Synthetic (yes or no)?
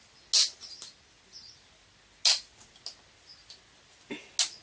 no